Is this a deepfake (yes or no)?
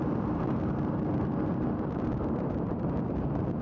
yes